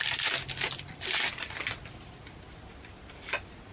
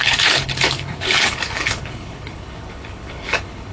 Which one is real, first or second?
first